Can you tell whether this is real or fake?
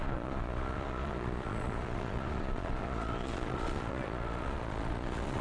fake